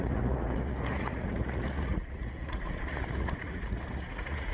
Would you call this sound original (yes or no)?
no